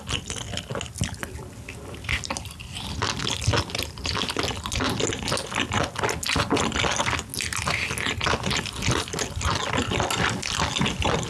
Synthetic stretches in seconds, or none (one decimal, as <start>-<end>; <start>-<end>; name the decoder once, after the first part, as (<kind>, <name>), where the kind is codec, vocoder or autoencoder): none